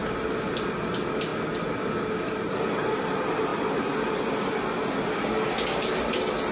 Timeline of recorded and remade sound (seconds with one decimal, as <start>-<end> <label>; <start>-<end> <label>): 0.0-6.5 recorded